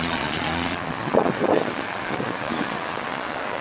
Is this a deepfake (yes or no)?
yes